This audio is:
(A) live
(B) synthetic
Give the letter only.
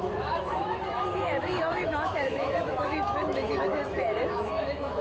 B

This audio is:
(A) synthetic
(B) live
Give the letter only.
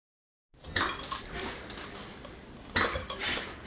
B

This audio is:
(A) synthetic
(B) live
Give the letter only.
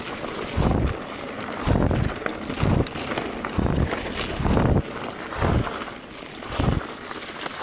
B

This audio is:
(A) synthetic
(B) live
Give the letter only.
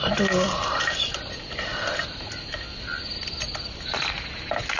B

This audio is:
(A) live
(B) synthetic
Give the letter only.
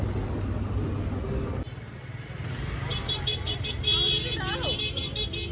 A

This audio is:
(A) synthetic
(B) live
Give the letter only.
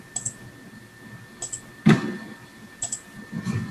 B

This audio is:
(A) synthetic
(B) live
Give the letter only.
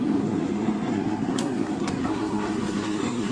A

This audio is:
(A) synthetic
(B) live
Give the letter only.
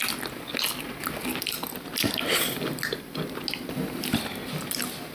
B